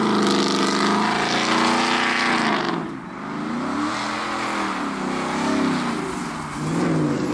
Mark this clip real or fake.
real